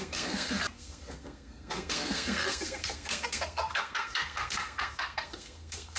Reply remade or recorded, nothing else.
remade